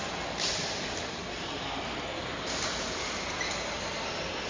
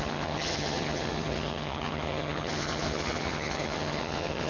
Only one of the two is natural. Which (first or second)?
first